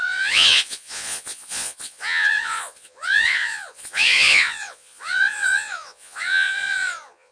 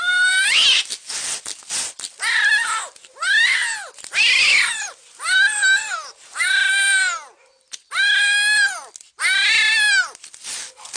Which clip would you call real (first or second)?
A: second